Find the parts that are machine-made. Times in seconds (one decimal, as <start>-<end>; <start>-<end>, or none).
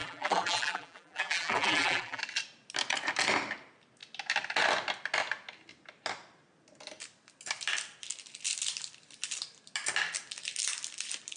0.0-2.2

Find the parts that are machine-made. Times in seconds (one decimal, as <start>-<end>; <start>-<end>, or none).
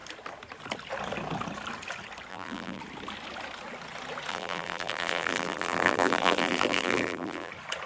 2.3-2.8; 4.3-7.5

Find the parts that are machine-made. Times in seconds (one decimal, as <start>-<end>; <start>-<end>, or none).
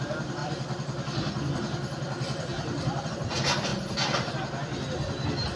0.4-3.1; 3.7-4.3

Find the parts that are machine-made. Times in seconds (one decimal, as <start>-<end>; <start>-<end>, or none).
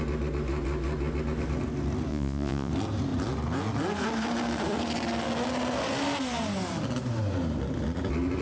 2.1-2.7